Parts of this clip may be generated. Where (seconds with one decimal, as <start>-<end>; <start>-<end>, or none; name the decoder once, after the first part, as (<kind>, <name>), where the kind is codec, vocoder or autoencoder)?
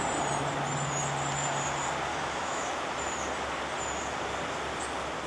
2.1-2.7 (autoencoder, DAC-VAE)